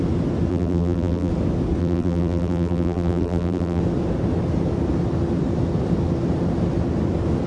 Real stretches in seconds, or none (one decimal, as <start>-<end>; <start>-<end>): 0.0-0.5; 1.3-1.8; 3.8-7.5